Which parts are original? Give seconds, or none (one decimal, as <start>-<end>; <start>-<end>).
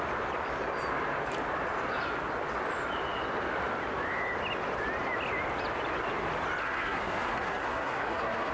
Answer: 0.0-6.6